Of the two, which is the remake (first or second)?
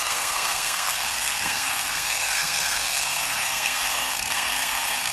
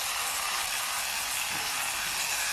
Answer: first